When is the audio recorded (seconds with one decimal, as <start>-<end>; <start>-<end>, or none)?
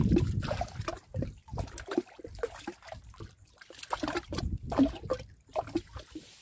0.0-6.4